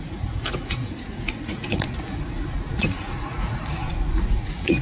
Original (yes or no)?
no